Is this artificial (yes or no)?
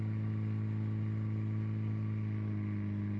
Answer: no